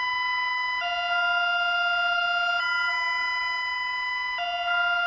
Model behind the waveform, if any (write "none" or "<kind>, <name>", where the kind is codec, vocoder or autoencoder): none